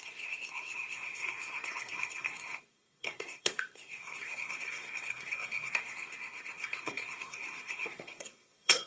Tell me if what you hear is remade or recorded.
remade